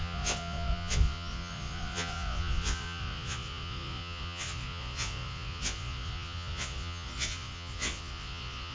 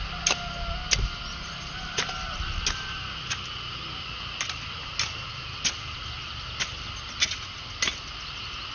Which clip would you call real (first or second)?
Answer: second